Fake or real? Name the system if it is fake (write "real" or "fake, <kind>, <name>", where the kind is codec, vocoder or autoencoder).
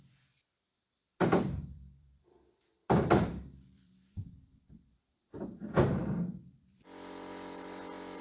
fake, vocoder, BigVGAN v2